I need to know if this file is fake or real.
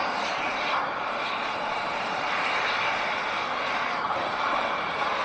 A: fake